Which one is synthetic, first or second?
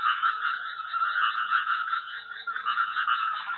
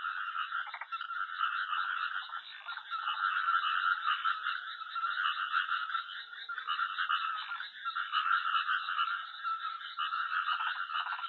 first